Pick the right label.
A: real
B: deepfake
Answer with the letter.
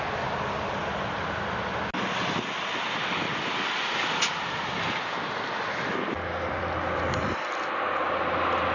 A